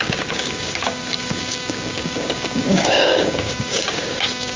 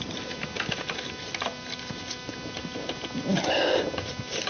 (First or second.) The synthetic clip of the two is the first